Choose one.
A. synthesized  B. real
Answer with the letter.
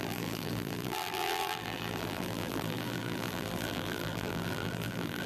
A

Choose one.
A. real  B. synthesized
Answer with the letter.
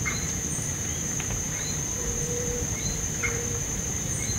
B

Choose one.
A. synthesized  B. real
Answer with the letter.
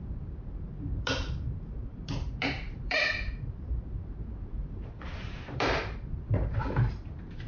A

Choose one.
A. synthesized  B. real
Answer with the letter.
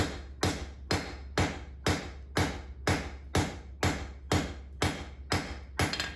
B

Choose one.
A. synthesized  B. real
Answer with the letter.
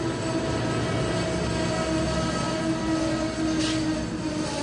B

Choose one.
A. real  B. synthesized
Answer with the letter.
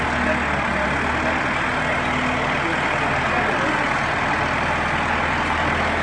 A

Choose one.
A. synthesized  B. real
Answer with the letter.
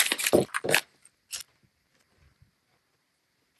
B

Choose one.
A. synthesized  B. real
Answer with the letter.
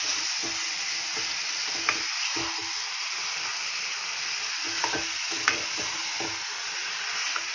B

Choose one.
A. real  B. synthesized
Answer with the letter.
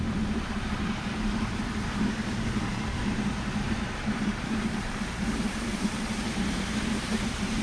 B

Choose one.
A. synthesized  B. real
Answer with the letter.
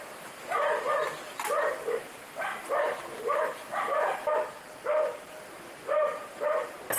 A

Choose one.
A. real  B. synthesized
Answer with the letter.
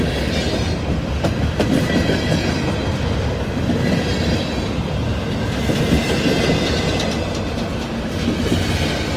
A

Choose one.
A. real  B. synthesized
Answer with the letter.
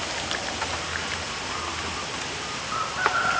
A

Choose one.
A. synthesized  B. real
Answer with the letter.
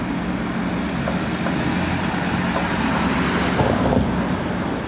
B